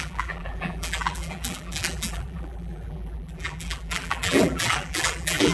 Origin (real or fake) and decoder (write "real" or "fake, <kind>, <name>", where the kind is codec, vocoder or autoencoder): fake, vocoder, BigVGAN v2